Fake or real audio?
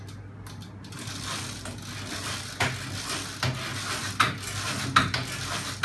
real